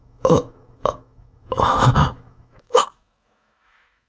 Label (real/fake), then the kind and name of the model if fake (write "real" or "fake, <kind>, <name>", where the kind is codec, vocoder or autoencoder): fake, autoencoder, DAC-VAE